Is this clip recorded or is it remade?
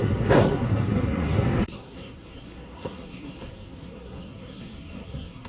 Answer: remade